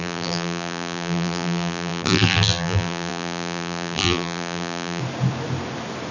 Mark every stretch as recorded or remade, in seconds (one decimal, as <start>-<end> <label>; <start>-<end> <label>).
0.0-5.0 remade; 5.0-6.1 recorded